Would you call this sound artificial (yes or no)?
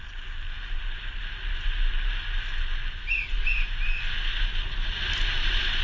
no